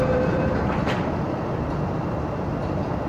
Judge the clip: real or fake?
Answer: fake